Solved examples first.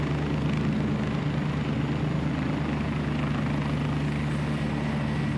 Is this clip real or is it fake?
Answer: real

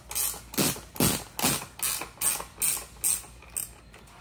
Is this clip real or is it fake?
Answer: real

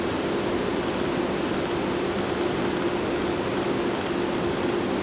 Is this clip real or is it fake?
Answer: real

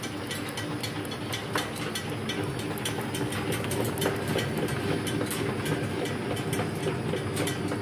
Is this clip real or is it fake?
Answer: real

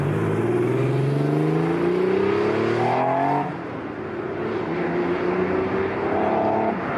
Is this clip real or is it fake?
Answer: real